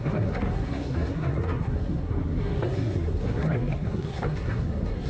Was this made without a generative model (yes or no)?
no